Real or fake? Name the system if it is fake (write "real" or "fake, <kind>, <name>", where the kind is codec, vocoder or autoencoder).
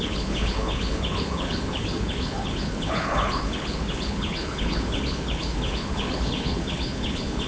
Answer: fake, codec, HILCodec